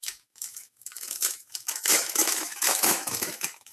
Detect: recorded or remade remade